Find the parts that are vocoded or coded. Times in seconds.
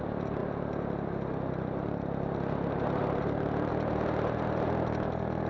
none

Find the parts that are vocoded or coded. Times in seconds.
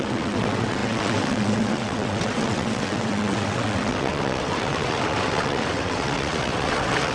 0.0-7.1 (vocoder, WaveNeXt)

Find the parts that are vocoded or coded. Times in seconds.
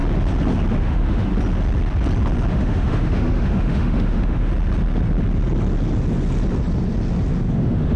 0.8-1.3 (autoencoder, DAC-VAE); 2.5-4.5; 7.5-8.0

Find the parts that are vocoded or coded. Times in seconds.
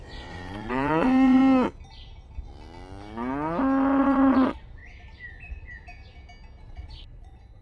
0.0-1.4 (vocoder, Vocos); 4.0-4.8; 6.6-7.6